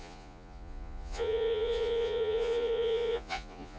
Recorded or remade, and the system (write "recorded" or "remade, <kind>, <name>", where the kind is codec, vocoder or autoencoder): remade, vocoder, Vocos